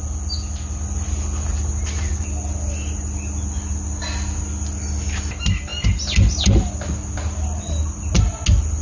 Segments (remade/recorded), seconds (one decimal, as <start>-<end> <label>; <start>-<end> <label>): 0.0-8.8 recorded